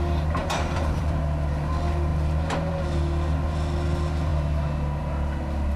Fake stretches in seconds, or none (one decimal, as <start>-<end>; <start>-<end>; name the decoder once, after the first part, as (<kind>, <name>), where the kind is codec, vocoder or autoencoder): 0.4-1.2 (vocoder, BigVGAN v2)